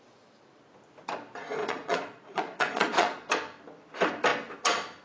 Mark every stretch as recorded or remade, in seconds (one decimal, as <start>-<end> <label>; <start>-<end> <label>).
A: 0.0-1.6 recorded; 1.6-3.3 remade; 3.3-5.0 recorded

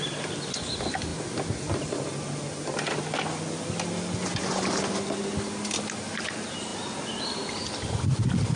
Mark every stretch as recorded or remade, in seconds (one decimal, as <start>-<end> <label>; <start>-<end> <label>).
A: 0.0-8.6 recorded